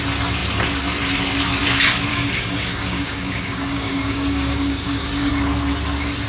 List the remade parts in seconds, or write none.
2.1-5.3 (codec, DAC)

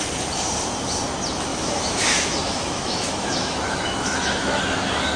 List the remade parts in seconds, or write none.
1.5-4.6 (autoencoder, DAC-VAE)

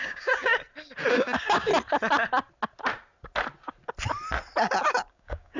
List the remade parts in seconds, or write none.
0.0-0.5 (codec, DAC); 1.1-1.7; 5.1-5.6

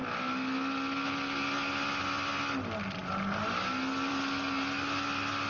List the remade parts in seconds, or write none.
none

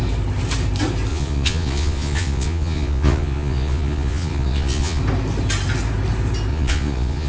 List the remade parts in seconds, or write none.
1.1-5.0 (vocoder, Vocos); 6.5-7.3